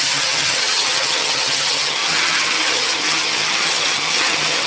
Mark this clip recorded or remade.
remade